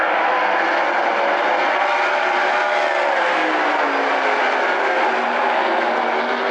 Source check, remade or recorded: recorded